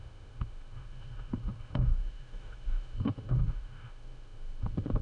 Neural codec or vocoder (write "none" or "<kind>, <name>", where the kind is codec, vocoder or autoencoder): autoencoder, DAC-VAE